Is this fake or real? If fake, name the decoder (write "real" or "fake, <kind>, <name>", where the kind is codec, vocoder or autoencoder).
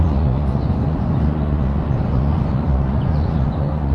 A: fake, vocoder, Vocos